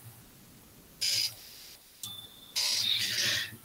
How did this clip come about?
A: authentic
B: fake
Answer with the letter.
A